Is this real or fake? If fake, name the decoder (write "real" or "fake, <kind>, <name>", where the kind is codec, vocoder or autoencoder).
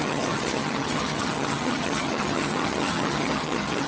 fake, vocoder, HiFi-GAN